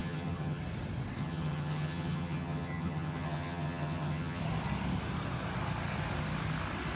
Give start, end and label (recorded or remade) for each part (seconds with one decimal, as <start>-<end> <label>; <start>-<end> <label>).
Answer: 0.0-0.6 remade; 0.6-1.2 recorded; 1.2-4.4 remade; 4.4-7.0 recorded

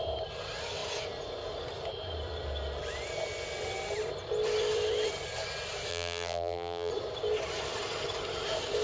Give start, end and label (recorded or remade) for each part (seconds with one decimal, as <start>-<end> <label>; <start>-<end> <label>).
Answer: 0.0-5.9 recorded; 5.9-6.9 remade; 6.9-8.8 recorded

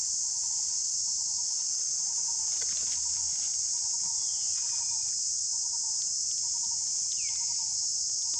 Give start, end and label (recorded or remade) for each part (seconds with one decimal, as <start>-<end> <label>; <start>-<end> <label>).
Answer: 0.0-1.6 recorded; 1.6-4.4 remade; 4.4-5.5 recorded; 5.5-6.7 remade; 6.7-8.4 recorded

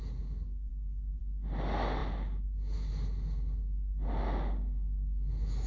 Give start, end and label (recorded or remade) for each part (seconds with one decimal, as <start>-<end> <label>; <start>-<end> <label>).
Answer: 0.0-5.7 recorded

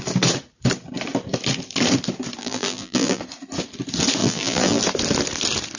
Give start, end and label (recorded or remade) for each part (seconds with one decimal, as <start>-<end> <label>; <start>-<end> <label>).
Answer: 0.0-2.4 recorded; 2.4-3.2 remade; 3.2-4.2 recorded; 4.2-4.8 remade; 4.8-5.8 recorded

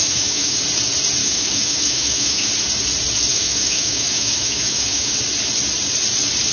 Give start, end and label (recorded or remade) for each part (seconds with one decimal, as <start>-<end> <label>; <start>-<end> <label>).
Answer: 0.0-0.6 remade; 0.6-1.2 recorded; 1.2-2.5 remade; 2.5-3.3 recorded; 3.3-5.2 remade; 5.2-6.5 recorded

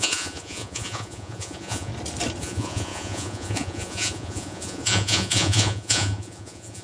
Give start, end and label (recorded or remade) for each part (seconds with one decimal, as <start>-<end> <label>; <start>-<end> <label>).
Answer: 0.0-1.9 remade; 1.9-2.4 recorded; 2.4-6.8 remade

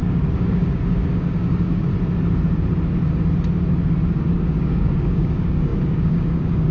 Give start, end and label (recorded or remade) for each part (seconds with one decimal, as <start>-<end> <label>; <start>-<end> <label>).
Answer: 0.0-1.9 remade; 1.9-4.3 recorded; 4.3-6.7 remade